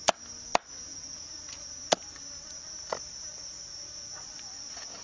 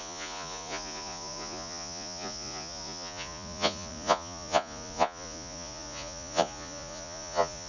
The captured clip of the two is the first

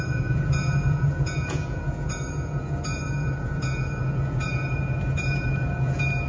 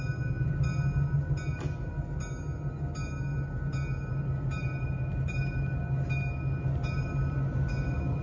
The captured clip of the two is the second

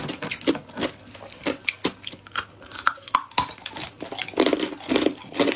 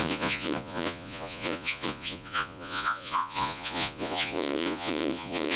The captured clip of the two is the first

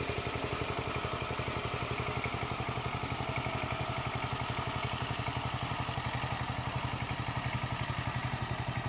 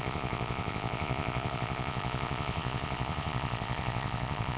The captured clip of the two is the first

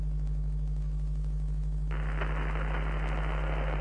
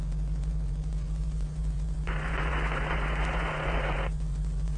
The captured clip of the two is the first